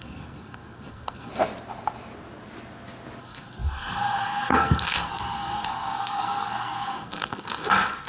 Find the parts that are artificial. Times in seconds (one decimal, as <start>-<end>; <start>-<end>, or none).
0.0-1.3; 3.2-8.1